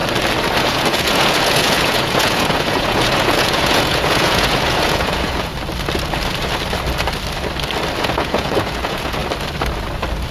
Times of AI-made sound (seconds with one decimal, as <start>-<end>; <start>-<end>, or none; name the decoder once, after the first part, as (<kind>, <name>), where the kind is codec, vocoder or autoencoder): 0.6-5.5 (vocoder, Vocos); 8.0-9.2